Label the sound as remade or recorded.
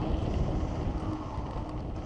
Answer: recorded